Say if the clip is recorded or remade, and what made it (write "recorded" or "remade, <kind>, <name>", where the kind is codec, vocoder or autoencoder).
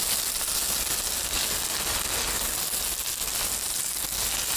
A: recorded